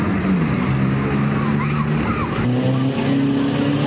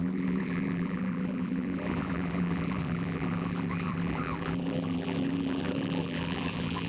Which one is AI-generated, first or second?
second